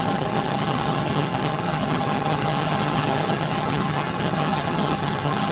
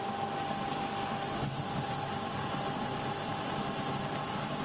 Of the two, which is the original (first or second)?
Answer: second